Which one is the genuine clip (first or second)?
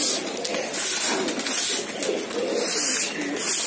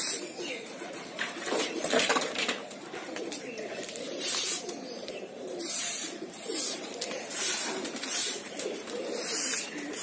first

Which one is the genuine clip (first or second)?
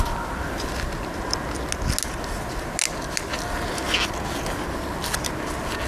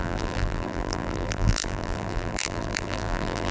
first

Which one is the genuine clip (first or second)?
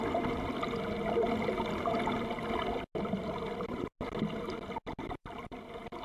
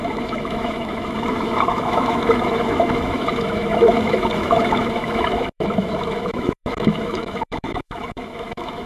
first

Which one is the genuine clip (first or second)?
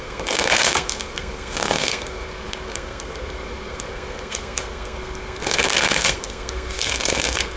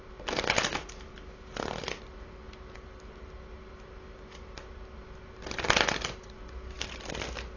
second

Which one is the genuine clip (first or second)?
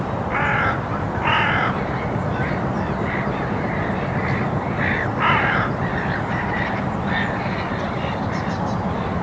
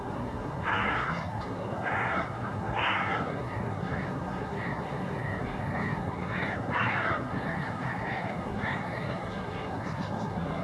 first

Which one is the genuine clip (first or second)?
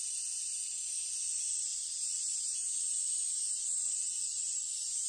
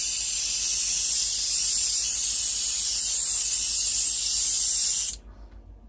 second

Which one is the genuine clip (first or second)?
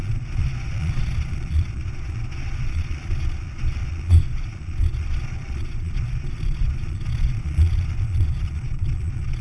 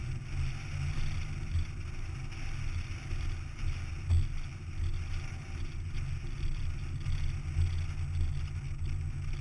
second